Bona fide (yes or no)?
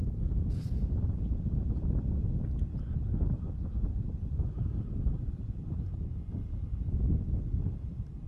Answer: yes